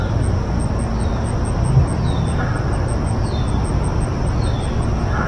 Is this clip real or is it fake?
real